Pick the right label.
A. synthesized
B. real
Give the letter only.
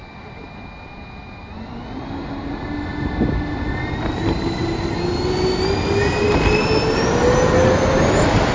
B